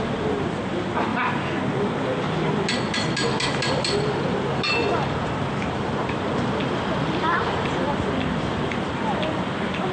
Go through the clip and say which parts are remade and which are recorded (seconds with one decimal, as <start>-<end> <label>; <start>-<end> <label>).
0.0-9.9 recorded